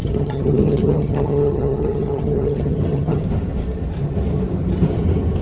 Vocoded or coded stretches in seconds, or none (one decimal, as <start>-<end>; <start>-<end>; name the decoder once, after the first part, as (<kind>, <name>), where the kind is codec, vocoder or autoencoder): 0.0-3.2 (vocoder, HiFi-GAN)